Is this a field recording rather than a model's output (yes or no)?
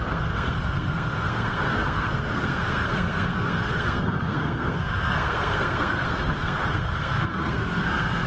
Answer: no